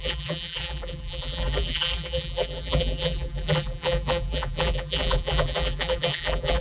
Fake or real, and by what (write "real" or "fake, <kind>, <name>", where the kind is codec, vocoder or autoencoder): fake, vocoder, BigVGAN v2